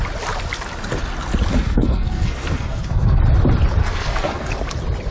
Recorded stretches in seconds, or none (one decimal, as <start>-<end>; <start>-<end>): 0.0-1.5; 3.2-3.8; 4.5-5.1